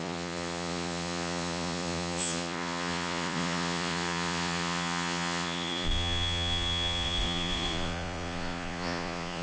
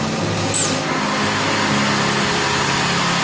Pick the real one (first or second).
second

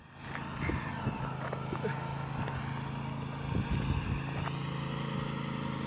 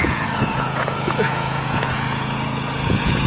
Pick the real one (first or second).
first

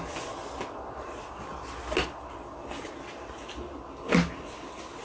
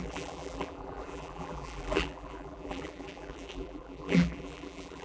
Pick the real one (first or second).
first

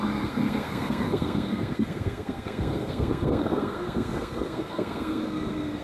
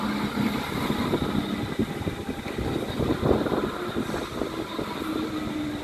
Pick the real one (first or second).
second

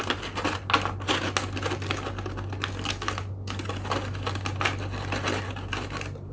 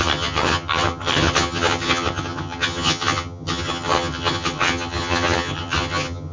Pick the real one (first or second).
first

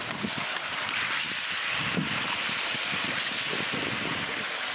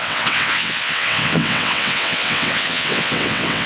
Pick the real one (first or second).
first